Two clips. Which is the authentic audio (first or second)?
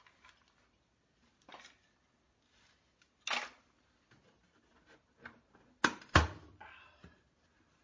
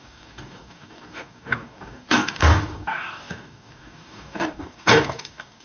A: first